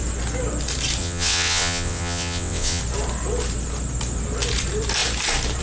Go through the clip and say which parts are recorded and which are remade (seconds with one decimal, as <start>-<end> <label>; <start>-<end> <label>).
0.0-1.0 recorded; 1.0-2.8 remade; 2.8-5.6 recorded